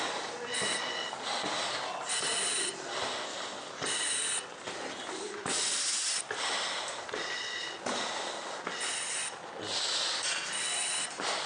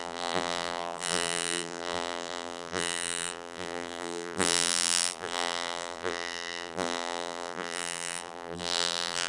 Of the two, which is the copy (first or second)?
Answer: second